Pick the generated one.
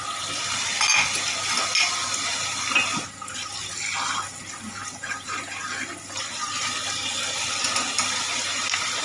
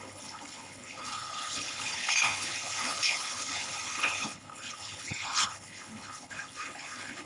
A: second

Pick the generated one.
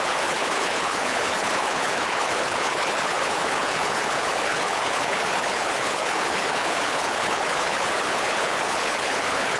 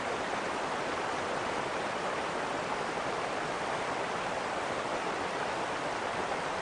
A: first